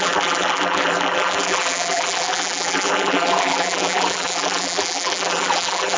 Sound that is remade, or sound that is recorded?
remade